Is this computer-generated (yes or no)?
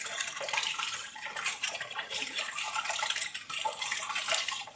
yes